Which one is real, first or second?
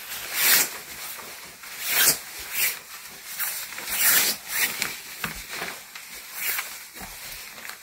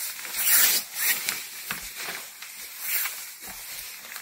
first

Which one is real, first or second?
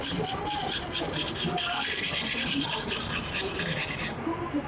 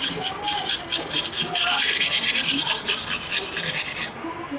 second